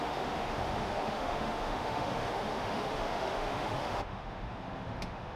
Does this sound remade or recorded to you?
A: remade